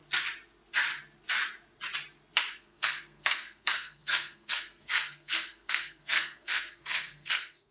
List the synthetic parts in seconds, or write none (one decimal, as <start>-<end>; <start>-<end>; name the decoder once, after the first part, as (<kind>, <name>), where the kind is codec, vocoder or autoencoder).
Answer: 2.5-7.7 (codec, SNAC)